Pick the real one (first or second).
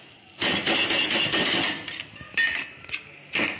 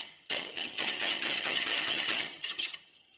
first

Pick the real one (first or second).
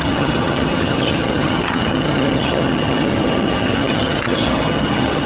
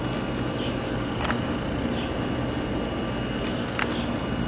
second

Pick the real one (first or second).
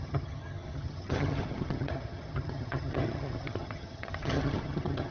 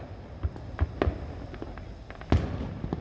second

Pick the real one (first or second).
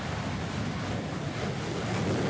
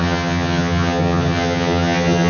first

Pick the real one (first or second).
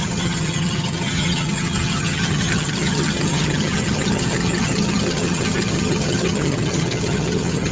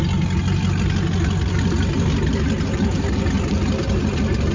second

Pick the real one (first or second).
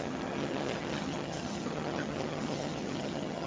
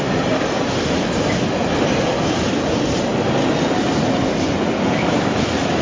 second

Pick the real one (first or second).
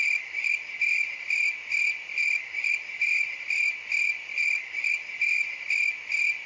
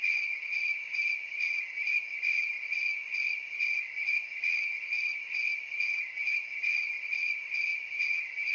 first